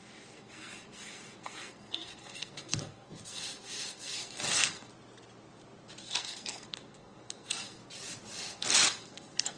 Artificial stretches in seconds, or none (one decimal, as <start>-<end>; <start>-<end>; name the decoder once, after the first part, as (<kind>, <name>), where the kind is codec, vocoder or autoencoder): 0.0-4.9 (codec, SNAC); 6.0-7.8; 8.4-9.6